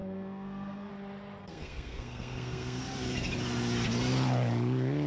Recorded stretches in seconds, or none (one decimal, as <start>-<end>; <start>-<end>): 0.9-1.4; 2.8-5.1